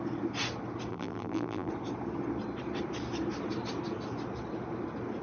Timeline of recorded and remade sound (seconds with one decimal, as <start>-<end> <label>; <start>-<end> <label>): 0.0-0.9 recorded; 0.9-1.7 remade; 1.7-5.2 recorded